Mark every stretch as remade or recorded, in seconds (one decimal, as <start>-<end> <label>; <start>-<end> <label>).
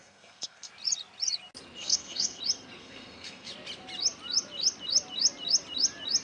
0.0-0.7 remade; 0.7-1.8 recorded; 1.8-2.4 remade; 2.4-2.8 recorded; 2.8-3.5 remade; 3.5-6.2 recorded